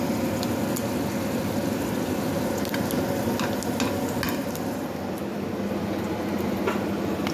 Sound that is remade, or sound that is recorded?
recorded